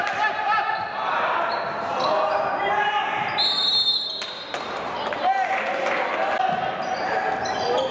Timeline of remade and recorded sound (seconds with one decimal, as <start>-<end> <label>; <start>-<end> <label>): 0.0-7.9 recorded